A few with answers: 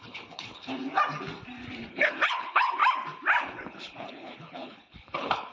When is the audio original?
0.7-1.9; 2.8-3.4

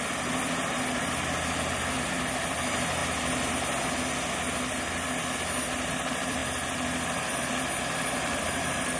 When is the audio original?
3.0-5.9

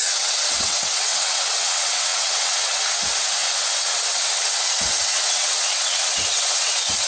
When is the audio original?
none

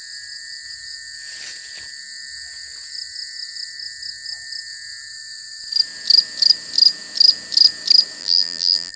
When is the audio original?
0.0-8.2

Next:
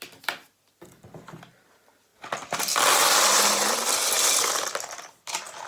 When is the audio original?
0.0-5.7

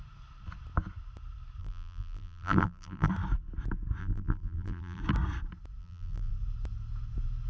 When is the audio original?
0.0-1.6; 3.1-4.0; 5.0-5.8; 6.3-7.5

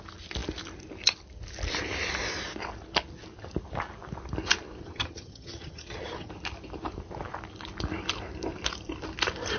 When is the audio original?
0.0-4.8; 6.3-9.6

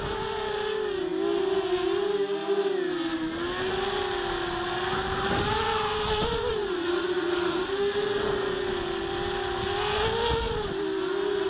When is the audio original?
0.0-6.5; 7.7-11.5